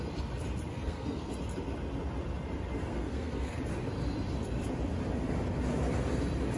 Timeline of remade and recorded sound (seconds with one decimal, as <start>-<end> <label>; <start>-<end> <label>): 0.0-0.7 recorded; 0.7-1.3 remade; 1.3-2.9 recorded; 2.9-3.6 remade; 3.6-6.6 recorded